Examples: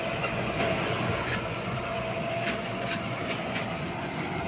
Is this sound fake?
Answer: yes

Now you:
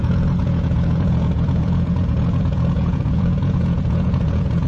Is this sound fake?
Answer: yes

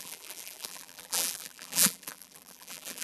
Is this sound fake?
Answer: yes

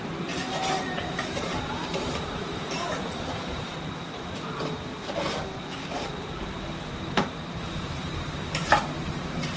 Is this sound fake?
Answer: yes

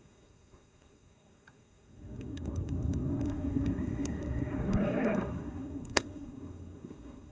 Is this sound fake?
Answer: yes